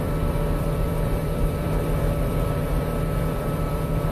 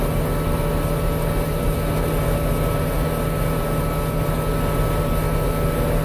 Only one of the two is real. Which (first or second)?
second